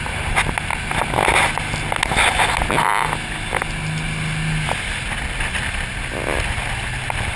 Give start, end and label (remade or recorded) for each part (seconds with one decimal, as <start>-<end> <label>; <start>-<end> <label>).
0.0-7.4 recorded